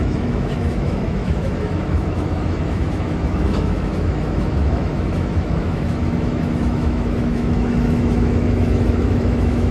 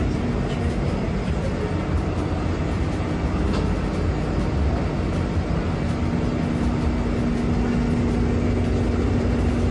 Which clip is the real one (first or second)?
second